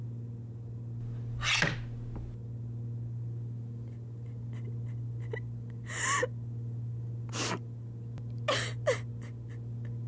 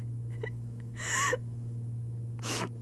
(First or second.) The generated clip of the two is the second